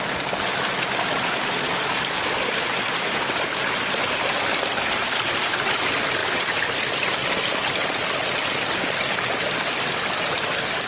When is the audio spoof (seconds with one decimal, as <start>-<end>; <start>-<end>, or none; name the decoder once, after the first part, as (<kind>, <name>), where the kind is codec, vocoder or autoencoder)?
none